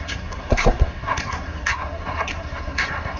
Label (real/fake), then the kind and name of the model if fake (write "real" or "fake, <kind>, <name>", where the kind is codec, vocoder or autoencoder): fake, codec, SNAC